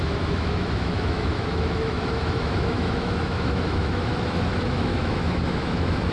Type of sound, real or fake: fake